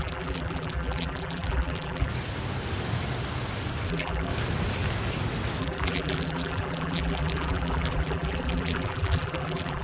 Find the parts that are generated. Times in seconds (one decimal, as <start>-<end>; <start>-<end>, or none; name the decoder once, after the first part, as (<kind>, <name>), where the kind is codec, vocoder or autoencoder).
0.0-2.1 (vocoder, BigVGAN v2); 3.9-4.3; 5.6-9.8